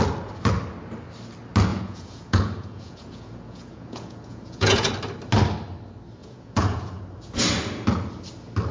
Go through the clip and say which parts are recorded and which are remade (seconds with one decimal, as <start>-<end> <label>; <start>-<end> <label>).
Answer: 0.0-1.7 recorded; 1.7-4.9 remade; 4.9-6.2 recorded; 6.2-7.0 remade; 7.0-8.7 recorded